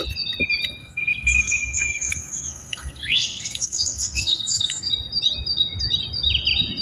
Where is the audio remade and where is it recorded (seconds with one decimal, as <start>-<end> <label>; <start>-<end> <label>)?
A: 0.0-0.8 recorded; 0.8-4.9 remade; 4.9-6.8 recorded